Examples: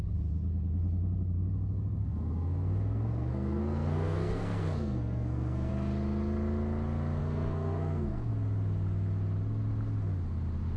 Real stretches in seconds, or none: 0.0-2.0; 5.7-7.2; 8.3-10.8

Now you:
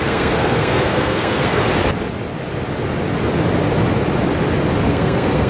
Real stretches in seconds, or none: 1.6-4.9

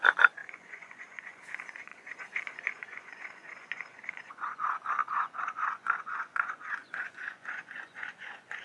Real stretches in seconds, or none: none

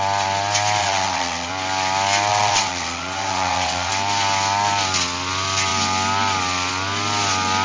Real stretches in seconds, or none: 0.0-0.8; 1.5-2.3; 3.9-7.6

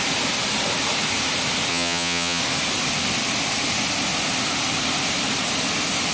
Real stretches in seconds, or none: 0.0-1.7; 2.4-6.1

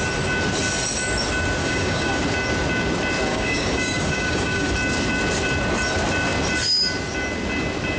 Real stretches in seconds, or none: 0.0-1.6; 2.2-3.3; 4.7-8.0